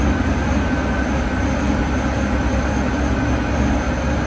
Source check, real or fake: real